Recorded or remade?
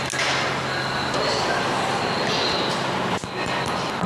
recorded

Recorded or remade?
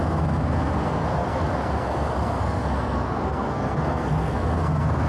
remade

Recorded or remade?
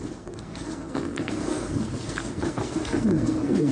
remade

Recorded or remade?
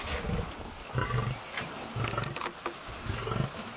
recorded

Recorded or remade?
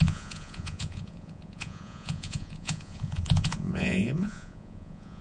remade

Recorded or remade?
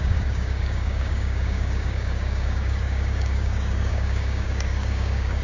remade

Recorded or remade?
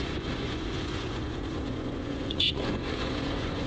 remade